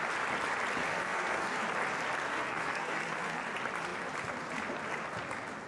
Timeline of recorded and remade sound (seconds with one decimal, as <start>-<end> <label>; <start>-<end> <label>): 0.0-0.9 recorded; 0.9-1.6 remade; 1.6-2.3 recorded; 2.3-3.4 remade; 3.4-5.7 recorded